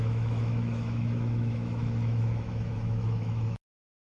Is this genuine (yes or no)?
no